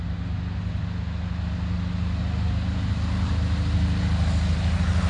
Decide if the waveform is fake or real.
real